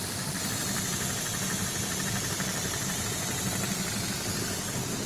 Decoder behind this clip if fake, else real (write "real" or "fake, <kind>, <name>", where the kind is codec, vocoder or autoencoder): real